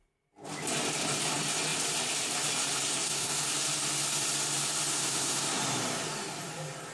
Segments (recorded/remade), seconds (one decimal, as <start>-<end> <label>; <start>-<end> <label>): 0.0-2.9 recorded; 2.9-3.4 remade; 3.4-4.9 recorded; 4.9-5.6 remade; 5.6-6.9 recorded